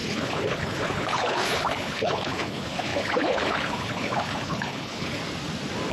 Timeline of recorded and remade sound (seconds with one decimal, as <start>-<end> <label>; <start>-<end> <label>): 0.0-5.2 remade; 5.2-5.9 recorded